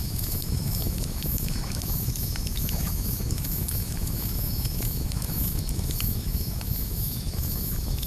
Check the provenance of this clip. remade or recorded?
remade